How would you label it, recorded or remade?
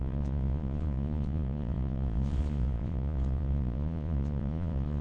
remade